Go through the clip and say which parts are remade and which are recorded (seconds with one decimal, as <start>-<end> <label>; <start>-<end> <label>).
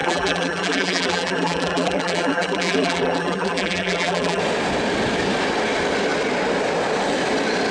0.0-4.4 remade; 4.4-7.7 recorded